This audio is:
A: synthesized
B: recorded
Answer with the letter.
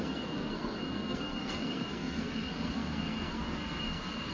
A